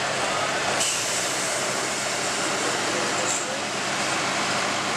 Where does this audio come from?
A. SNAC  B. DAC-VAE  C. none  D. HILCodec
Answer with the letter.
C